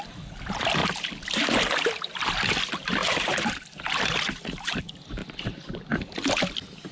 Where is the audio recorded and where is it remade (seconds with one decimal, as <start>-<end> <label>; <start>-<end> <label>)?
0.0-0.8 recorded; 0.8-2.2 remade; 2.2-3.0 recorded; 3.0-4.8 remade; 4.8-5.2 recorded; 5.2-6.9 remade